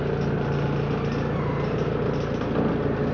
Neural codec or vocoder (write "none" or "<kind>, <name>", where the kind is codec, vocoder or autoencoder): none